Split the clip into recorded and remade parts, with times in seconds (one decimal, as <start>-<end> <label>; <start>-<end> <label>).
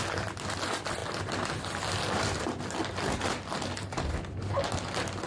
0.0-5.3 recorded